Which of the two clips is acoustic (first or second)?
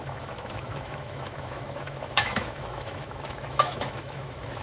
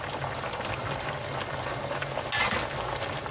second